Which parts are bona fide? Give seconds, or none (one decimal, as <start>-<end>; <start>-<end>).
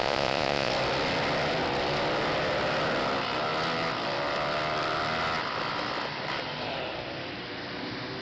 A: 0.7-8.2